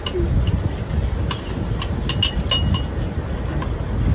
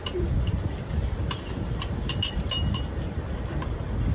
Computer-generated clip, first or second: second